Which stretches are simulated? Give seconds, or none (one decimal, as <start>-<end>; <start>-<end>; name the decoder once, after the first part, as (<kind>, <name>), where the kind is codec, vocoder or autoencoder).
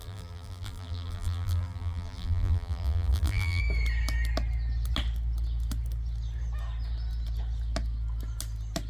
0.0-3.6 (vocoder, BigVGAN v2)